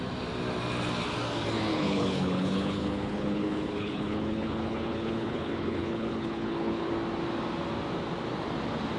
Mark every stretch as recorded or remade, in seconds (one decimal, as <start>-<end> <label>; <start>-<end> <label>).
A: 0.0-1.7 recorded; 1.7-6.9 remade; 6.9-9.0 recorded